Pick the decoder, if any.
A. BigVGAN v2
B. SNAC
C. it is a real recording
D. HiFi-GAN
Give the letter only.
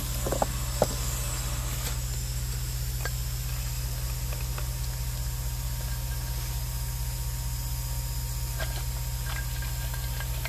C